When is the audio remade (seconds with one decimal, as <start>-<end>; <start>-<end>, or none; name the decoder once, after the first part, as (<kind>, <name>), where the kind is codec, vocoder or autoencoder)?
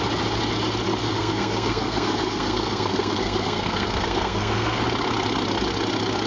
1.0-4.8 (codec, SNAC)